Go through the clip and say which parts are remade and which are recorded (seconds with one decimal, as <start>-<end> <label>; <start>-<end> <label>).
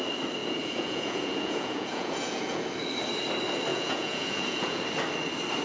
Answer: 0.0-0.4 recorded; 0.4-2.7 remade; 2.7-3.7 recorded; 3.7-4.8 remade; 4.8-5.6 recorded